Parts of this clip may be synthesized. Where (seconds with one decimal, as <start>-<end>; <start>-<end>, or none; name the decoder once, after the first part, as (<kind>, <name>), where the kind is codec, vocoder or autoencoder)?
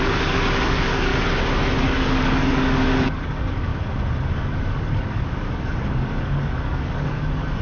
0.0-1.1 (codec, DAC); 1.8-3.7; 4.3-7.6